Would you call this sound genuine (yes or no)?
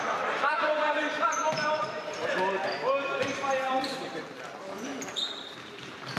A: no